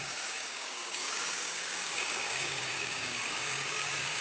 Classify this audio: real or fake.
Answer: fake